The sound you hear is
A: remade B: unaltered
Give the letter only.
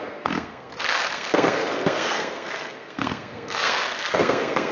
A